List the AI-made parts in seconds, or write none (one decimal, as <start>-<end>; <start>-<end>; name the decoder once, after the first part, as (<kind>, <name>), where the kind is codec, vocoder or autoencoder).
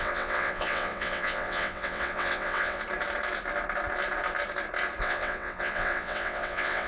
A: 0.0-2.8 (vocoder, WaveNeXt); 5.0-6.9